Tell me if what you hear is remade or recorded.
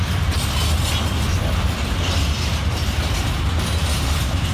recorded